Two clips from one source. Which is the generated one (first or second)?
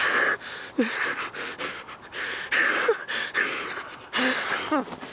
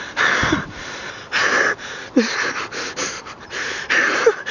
second